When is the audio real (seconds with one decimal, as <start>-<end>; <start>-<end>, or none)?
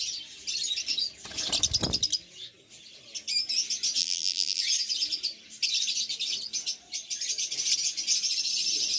0.0-4.0; 4.6-9.0